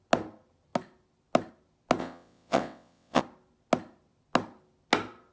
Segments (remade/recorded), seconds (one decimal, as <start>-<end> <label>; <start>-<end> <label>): 0.0-2.0 recorded; 2.0-3.2 remade; 3.2-5.3 recorded